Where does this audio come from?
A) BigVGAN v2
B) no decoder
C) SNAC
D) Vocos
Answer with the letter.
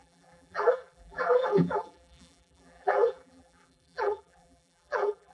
A